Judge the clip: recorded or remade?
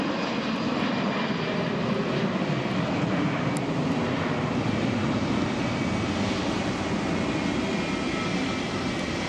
recorded